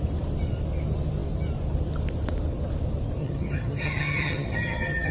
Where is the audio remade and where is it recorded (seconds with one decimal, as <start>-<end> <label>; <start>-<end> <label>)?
0.0-3.2 recorded; 3.2-5.1 remade